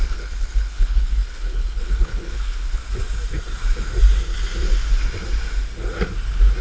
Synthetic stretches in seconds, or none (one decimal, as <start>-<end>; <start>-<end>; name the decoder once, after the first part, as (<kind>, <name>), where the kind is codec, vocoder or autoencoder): 0.0-2.8 (codec, HILCodec)